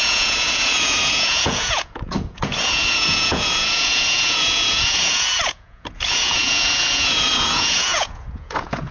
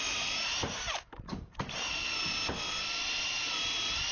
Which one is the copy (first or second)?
first